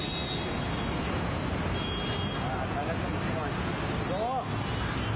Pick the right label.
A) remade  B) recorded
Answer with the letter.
B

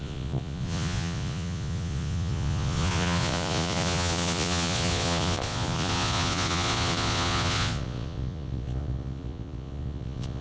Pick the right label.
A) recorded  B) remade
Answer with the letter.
B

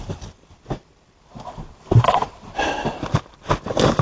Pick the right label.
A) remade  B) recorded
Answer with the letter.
B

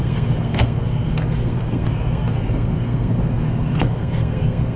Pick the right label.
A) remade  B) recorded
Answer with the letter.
A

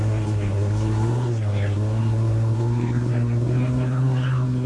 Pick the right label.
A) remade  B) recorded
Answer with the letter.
A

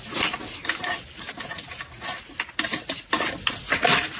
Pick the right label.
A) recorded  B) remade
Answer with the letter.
A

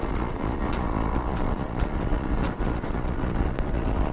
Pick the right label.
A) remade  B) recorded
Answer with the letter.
A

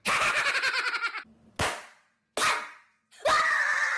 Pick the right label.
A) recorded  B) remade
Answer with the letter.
A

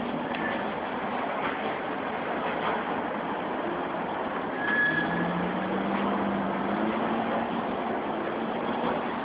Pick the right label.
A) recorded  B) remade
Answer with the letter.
A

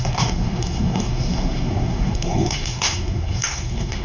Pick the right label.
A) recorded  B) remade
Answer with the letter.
B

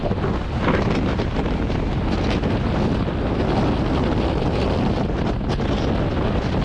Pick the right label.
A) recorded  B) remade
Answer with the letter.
A